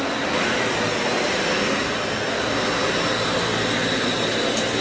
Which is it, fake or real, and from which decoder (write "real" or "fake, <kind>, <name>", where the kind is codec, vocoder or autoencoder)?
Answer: real